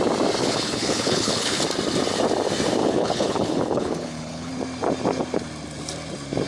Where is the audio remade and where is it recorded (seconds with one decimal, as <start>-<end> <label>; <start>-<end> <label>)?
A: 0.0-0.4 recorded; 0.4-1.6 remade; 1.6-2.8 recorded; 2.8-4.5 remade; 4.5-6.5 recorded